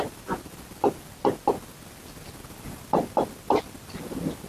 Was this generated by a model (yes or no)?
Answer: no